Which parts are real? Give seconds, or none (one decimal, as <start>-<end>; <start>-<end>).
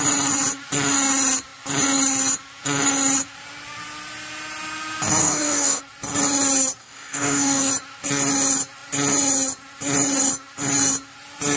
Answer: 0.0-5.2; 5.8-6.8; 7.7-11.6